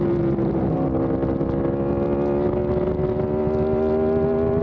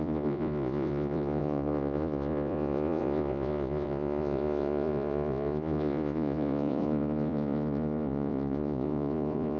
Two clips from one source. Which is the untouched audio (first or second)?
first